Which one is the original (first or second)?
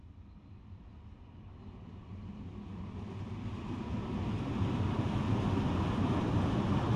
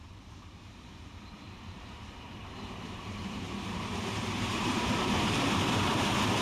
first